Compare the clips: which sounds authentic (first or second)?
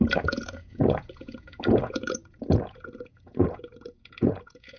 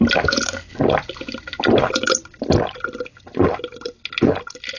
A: second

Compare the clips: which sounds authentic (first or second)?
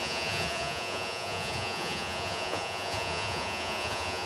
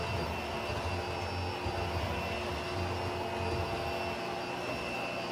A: second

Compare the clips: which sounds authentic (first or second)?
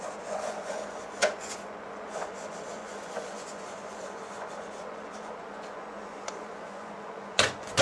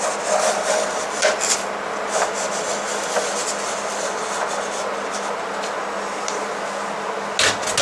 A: second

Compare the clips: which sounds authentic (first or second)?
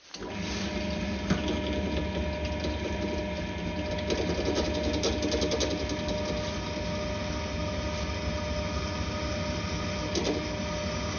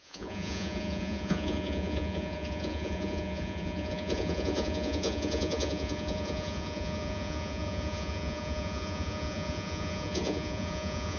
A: first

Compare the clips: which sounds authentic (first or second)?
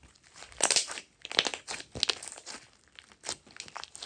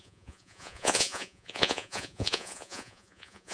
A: first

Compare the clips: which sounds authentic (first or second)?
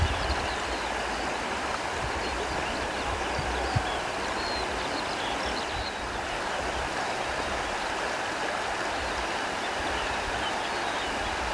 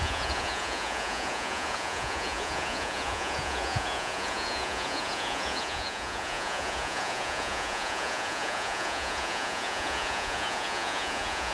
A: first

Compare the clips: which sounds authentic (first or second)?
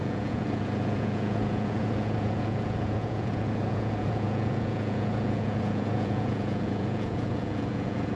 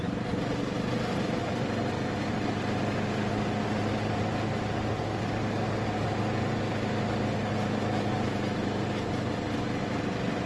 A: second